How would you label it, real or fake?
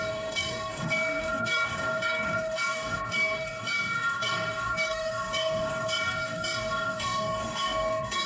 fake